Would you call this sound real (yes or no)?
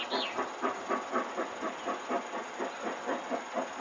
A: yes